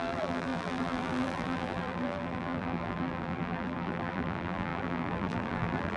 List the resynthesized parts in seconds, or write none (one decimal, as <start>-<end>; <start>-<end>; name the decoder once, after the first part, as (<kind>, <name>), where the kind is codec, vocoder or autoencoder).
0.0-6.0 (vocoder, BigVGAN v2)